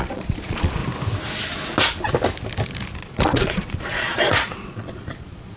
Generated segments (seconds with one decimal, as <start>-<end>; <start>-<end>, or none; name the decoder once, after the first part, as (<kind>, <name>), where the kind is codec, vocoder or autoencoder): 0.0-0.8 (vocoder, Vocos); 3.0-5.6